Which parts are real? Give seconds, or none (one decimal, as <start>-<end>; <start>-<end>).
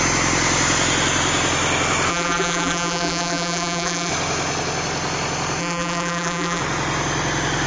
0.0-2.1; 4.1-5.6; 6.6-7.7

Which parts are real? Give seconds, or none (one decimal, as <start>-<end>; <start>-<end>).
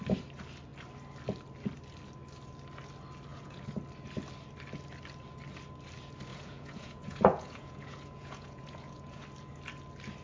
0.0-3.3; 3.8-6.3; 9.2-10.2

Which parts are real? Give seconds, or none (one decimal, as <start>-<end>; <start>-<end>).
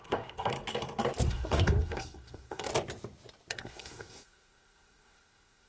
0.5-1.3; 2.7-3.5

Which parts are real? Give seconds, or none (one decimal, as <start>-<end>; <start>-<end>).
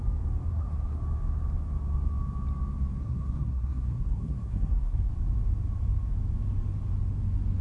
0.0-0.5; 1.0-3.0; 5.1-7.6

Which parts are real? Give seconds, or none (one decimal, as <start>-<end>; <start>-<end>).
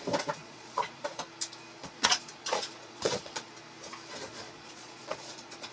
0.0-0.4; 1.0-1.8; 3.5-4.3